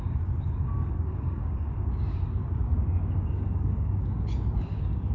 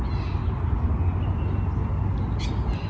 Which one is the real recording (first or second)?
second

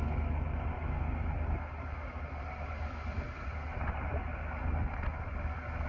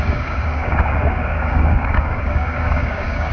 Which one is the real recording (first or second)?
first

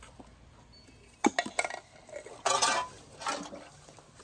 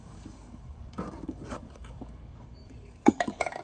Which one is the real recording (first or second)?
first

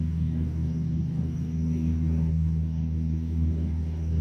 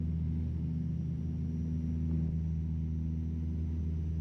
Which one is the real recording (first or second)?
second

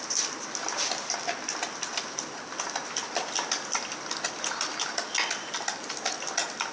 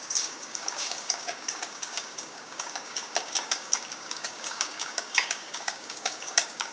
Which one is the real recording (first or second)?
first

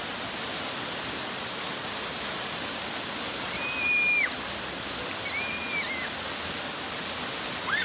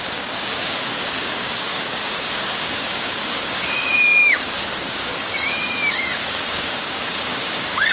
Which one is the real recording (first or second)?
first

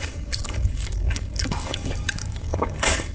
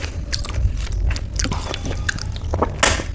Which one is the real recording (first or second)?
second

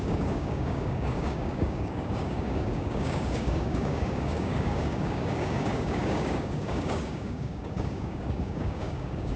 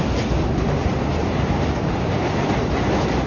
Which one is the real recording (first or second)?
second